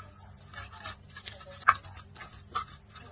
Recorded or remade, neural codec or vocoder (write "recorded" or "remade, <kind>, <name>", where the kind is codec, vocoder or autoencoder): recorded